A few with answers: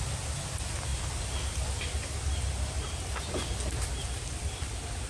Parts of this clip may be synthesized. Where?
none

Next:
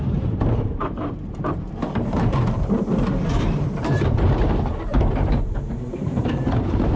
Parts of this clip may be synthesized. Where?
0.0-7.0 (vocoder, BigVGAN v2)

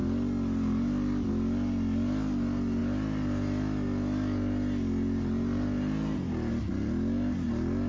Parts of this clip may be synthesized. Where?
0.0-1.3 (vocoder, BigVGAN v2)